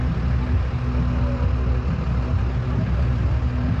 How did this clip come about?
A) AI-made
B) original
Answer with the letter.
B